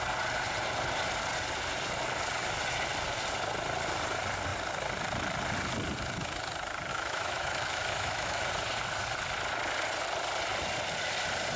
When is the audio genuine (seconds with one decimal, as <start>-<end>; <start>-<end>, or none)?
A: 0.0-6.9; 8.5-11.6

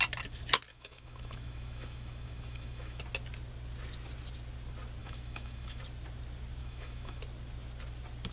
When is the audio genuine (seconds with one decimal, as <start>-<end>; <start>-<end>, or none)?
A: 0.0-0.7; 3.0-5.0; 5.8-6.6; 7.2-8.3

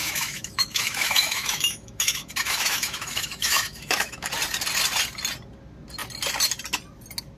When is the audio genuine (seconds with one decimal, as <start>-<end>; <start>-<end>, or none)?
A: 4.3-7.4

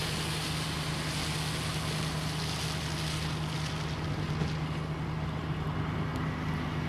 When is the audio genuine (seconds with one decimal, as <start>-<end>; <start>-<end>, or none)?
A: 0.0-6.9

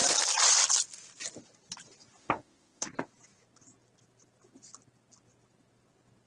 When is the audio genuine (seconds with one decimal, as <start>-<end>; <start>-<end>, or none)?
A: 0.0-2.2; 2.9-6.3

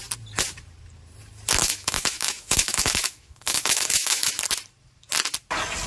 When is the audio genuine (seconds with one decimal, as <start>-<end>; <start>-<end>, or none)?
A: 0.0-1.6; 4.3-5.9

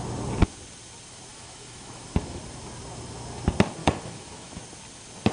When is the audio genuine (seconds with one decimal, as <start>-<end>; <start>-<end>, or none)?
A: 0.0-1.3; 2.4-3.8; 4.6-5.3